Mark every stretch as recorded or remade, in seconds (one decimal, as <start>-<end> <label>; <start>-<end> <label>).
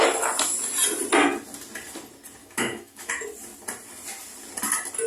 0.0-2.4 recorded; 2.4-3.1 remade; 3.1-5.1 recorded